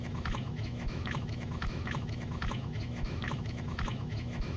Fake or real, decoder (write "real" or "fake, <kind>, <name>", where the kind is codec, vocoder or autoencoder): fake, autoencoder, DAC-VAE